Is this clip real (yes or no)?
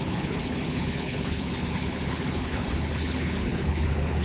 no